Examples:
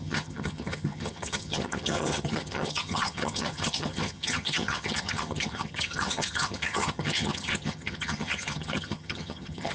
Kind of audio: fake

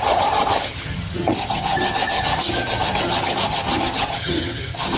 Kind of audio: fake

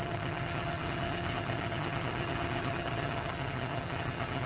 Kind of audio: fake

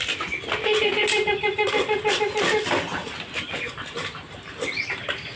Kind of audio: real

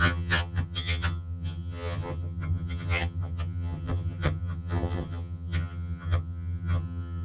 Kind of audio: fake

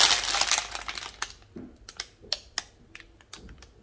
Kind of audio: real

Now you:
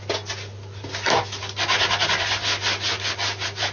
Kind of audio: real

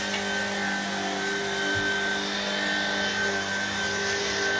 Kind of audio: real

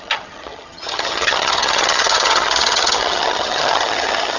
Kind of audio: fake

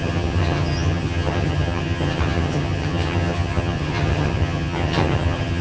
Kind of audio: fake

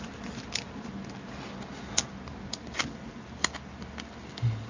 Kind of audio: real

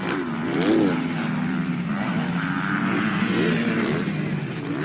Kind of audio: real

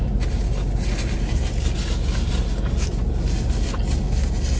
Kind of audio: real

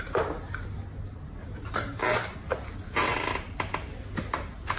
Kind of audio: real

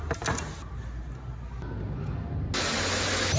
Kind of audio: real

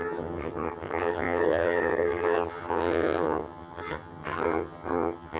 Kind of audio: fake